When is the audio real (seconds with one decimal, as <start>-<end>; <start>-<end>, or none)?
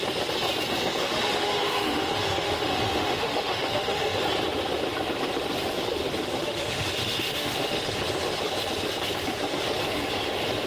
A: 0.0-1.0; 4.2-6.4; 7.9-10.7